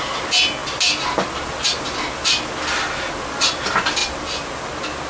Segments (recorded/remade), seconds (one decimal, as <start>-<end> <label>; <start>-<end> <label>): 0.0-5.1 recorded